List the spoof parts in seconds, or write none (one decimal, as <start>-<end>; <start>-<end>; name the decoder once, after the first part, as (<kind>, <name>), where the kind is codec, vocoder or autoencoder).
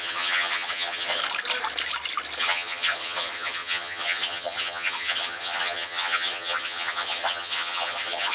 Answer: 0.0-1.2 (vocoder, HiFi-GAN); 2.4-8.3